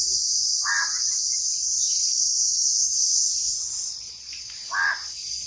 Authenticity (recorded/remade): recorded